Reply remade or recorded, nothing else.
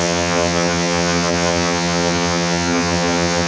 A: remade